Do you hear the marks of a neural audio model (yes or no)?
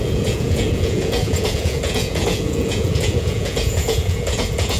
yes